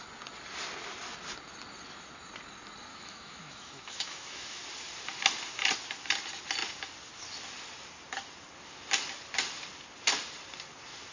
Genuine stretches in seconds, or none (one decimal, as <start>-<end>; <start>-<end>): 0.0-2.9; 4.6-11.1